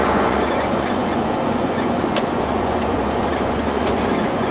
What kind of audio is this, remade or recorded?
remade